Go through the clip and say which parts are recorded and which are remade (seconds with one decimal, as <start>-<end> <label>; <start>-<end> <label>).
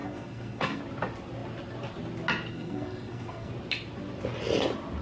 0.0-0.8 remade; 0.8-2.5 recorded; 2.5-3.5 remade; 3.5-5.0 recorded